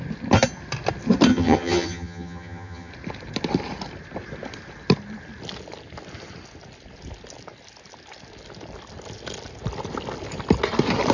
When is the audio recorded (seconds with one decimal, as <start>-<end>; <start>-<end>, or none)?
0.0-1.3; 2.9-11.1